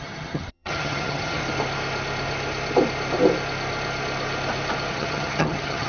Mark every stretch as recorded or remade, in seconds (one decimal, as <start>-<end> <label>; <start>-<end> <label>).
0.0-1.4 remade; 1.4-4.9 recorded; 4.9-5.9 remade